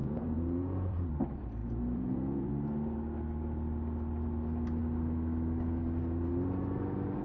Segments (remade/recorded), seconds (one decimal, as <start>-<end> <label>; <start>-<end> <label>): 0.0-1.1 remade; 1.1-1.6 recorded; 1.6-2.5 remade; 2.5-7.2 recorded

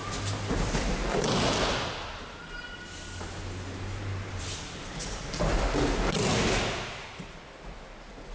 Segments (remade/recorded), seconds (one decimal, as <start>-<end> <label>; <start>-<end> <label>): 0.0-8.3 recorded

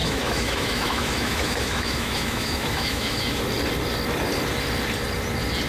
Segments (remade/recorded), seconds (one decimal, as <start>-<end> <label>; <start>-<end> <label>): 0.0-3.4 remade; 3.4-5.7 recorded